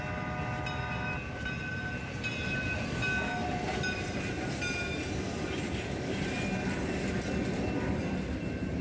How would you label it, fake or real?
real